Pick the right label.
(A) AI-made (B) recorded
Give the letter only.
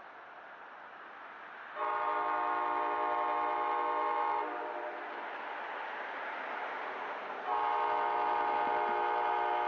B